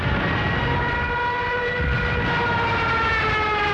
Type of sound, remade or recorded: recorded